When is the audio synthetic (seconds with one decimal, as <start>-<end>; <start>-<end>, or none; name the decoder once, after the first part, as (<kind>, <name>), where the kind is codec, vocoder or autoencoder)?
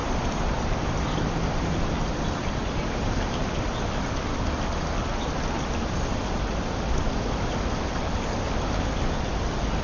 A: 0.0-1.8 (vocoder, BigVGAN v2); 2.6-3.4